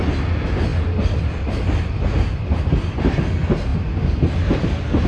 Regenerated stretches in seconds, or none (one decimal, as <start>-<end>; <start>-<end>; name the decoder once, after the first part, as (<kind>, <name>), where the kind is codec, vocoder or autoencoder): none